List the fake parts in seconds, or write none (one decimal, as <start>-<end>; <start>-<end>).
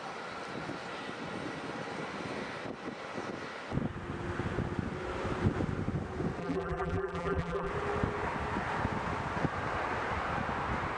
6.4-7.7